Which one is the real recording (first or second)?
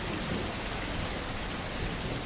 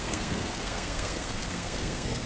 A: first